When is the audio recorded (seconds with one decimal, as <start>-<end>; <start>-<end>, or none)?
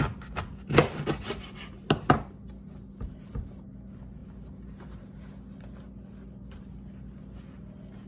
0.0-8.1